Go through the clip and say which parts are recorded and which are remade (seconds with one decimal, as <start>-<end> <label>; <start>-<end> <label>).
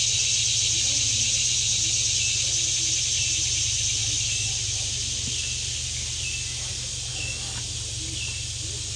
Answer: 0.0-4.0 recorded; 4.0-4.5 remade; 4.5-7.1 recorded; 7.1-7.6 remade; 7.6-9.0 recorded